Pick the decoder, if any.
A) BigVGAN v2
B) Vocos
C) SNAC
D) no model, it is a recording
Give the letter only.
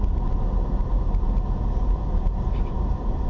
D